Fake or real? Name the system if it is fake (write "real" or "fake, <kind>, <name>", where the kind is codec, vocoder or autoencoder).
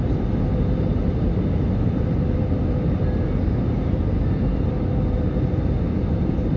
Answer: real